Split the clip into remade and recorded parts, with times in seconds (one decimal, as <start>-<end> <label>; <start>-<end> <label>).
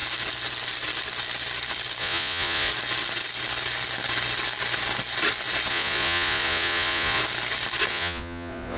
0.0-2.0 recorded; 2.0-2.7 remade; 2.7-5.7 recorded; 5.7-7.2 remade; 7.2-7.9 recorded; 7.9-8.8 remade